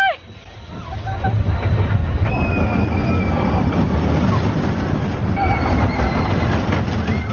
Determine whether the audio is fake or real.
real